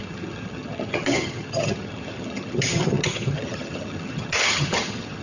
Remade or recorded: remade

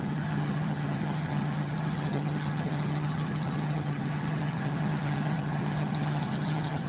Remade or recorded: remade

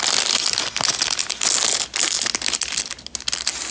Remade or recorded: recorded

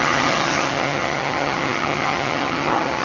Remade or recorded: remade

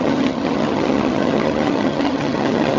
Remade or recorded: remade